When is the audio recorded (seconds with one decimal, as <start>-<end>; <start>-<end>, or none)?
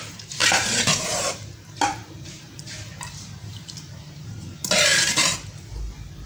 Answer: 0.0-0.4; 4.2-6.3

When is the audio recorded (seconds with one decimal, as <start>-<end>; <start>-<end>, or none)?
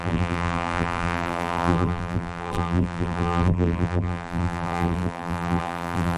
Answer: none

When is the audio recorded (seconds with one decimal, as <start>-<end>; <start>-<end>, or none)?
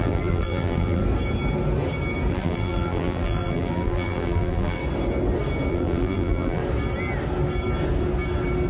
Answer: 1.0-2.3; 4.8-5.7; 6.6-8.7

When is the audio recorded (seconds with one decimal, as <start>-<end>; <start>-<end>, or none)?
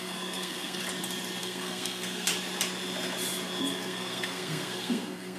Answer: 0.8-1.4; 2.3-3.6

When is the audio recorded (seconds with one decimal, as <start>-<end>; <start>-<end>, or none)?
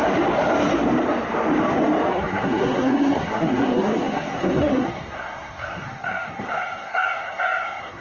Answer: 0.0-2.1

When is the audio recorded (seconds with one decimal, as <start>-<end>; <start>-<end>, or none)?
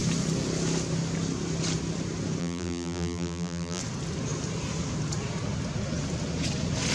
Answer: 0.0-2.4; 3.8-6.9